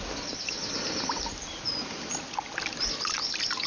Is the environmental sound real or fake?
real